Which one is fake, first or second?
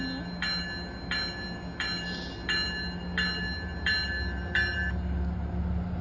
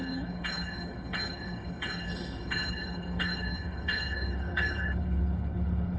second